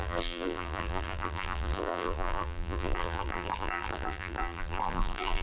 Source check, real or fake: fake